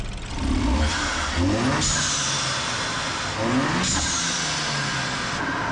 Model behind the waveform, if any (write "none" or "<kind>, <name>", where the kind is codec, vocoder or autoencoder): none